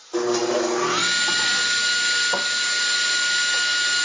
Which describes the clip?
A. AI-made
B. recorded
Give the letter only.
B